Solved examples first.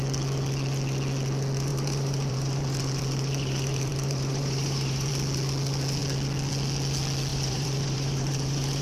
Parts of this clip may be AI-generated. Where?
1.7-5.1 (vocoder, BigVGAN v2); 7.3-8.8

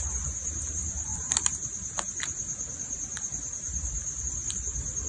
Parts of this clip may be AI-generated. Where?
0.0-5.1 (vocoder, BigVGAN v2)

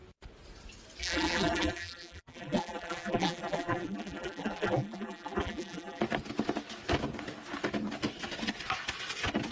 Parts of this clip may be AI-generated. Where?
1.0-6.0 (vocoder, BigVGAN v2)

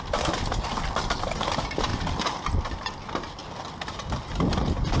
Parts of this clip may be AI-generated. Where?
0.0-1.9 (vocoder, BigVGAN v2); 2.6-5.0